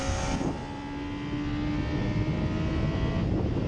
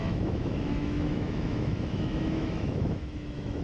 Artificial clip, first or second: second